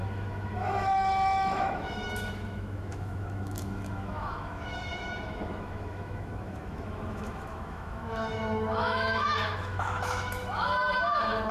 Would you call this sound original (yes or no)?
no